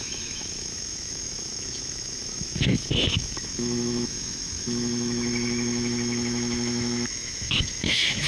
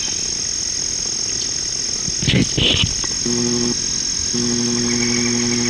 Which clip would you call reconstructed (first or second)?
first